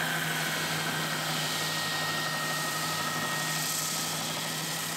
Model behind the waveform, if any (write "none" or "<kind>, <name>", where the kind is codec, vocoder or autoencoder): none